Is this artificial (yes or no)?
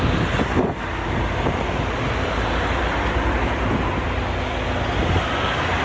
no